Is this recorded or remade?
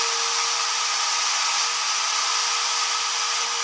recorded